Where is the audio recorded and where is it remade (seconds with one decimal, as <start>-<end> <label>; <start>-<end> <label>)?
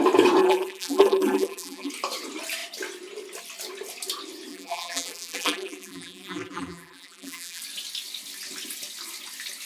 0.0-0.4 recorded; 0.4-1.9 remade; 1.9-4.5 recorded; 4.5-7.6 remade; 7.6-9.7 recorded